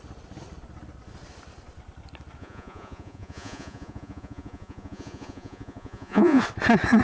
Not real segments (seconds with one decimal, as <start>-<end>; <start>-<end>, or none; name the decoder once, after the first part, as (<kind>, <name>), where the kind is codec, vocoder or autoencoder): 2.4-6.4 (vocoder, Vocos)